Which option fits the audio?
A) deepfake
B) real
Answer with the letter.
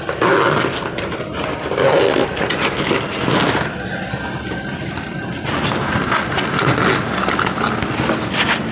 B